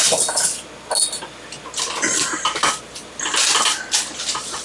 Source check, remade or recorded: recorded